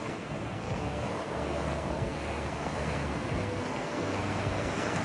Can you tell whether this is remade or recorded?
remade